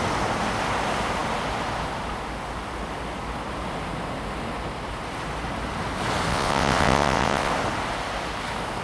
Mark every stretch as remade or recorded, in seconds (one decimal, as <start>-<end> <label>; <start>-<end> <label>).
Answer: 0.0-6.3 recorded; 6.3-7.5 remade; 7.5-8.8 recorded